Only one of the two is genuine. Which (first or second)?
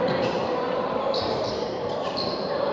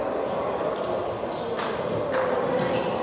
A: second